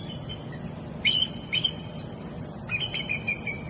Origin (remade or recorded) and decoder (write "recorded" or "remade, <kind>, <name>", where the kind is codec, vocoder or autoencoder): recorded